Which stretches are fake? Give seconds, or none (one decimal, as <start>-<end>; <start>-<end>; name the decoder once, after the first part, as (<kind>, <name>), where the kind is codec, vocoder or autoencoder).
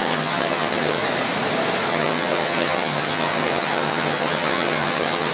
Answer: 0.0-1.0 (vocoder, HiFi-GAN); 1.9-5.3